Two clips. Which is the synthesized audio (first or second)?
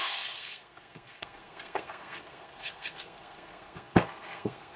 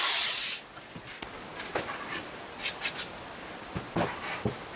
first